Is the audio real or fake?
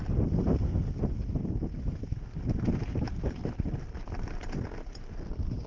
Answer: real